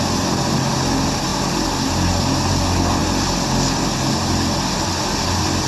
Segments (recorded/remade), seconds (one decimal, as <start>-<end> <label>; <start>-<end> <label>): 0.0-5.7 recorded